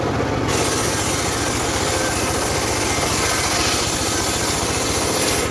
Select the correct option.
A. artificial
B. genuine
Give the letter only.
B